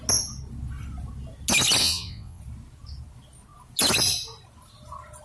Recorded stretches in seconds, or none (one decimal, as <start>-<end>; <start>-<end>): 0.0-1.8; 2.4-5.2